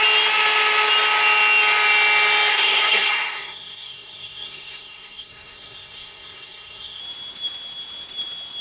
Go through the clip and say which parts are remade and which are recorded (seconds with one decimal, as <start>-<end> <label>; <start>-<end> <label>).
0.0-2.5 recorded; 2.5-7.0 remade; 7.0-8.6 recorded